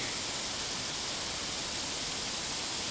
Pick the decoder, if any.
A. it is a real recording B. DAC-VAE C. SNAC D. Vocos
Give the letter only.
A